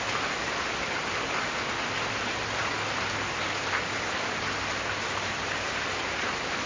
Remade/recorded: recorded